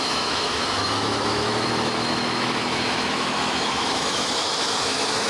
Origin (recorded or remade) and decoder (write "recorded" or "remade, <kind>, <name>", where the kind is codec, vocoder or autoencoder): remade, autoencoder, DAC-VAE